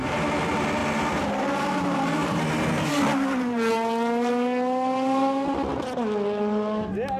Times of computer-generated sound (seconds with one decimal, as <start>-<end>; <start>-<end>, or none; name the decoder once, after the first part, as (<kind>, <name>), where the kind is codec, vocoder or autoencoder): none